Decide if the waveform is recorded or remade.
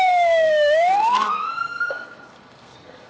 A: remade